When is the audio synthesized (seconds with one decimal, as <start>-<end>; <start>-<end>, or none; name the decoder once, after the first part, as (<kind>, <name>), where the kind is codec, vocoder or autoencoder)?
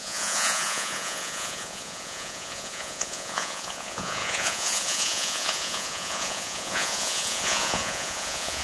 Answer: 0.0-8.6 (vocoder, Vocos)